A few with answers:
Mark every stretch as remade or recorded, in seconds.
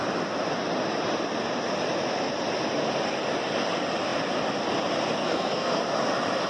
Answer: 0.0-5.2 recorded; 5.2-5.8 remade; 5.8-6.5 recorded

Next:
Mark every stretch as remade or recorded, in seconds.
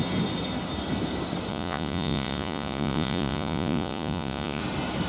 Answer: 0.0-1.5 recorded; 1.5-4.6 remade; 4.6-5.1 recorded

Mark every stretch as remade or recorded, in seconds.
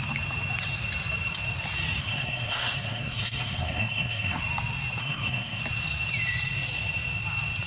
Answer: 0.0-2.0 recorded; 2.0-4.4 remade; 4.4-5.0 recorded; 5.0-5.6 remade; 5.6-7.7 recorded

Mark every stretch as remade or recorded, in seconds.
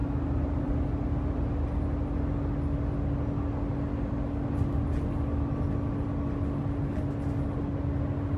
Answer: 0.0-8.4 recorded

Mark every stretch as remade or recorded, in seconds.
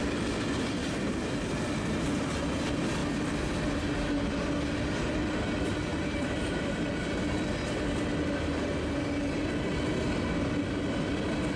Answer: 0.0-0.8 recorded; 0.8-1.5 remade; 1.5-5.9 recorded; 5.9-6.9 remade; 6.9-11.6 recorded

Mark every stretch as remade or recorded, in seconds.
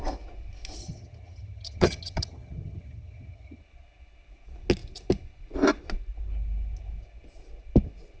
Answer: 0.0-0.8 recorded; 0.8-3.6 remade; 3.6-8.2 recorded